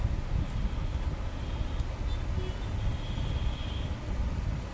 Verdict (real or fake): real